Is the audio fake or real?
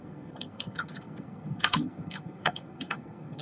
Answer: fake